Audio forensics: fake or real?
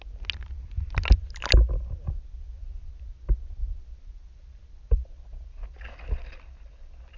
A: real